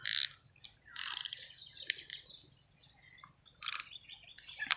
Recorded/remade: recorded